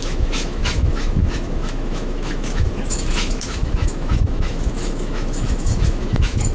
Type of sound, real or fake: fake